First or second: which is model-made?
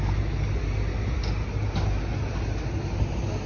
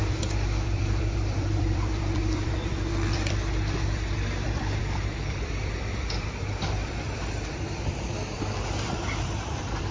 second